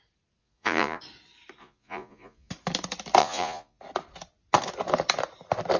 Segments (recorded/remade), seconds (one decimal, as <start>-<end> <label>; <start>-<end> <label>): 0.0-0.4 recorded; 0.4-1.0 remade; 1.0-1.6 recorded; 1.6-2.5 remade; 2.5-3.2 recorded; 3.2-3.8 remade; 3.8-5.8 recorded